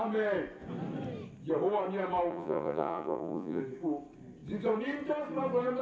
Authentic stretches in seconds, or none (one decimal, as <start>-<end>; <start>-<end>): 0.0-2.3; 3.6-5.8